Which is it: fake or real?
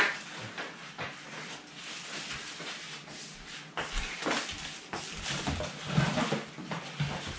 real